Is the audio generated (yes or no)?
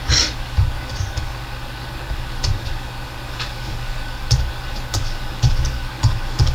yes